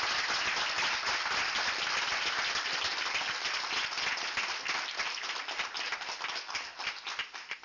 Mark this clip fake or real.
real